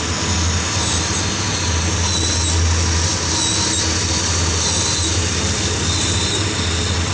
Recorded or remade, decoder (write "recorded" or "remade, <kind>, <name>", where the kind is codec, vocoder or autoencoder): recorded